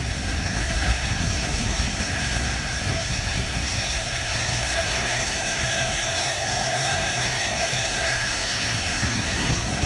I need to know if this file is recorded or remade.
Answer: remade